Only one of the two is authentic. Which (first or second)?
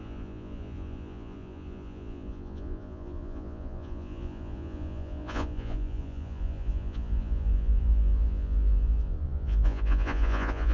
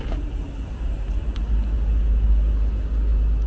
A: second